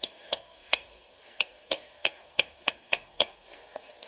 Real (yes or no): no